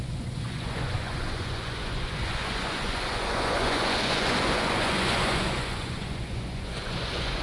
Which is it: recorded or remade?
remade